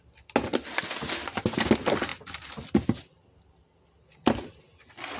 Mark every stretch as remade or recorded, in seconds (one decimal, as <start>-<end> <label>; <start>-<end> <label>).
0.0-5.2 recorded